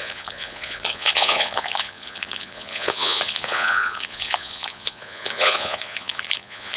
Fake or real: fake